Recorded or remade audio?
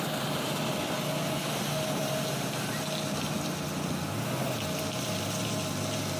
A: recorded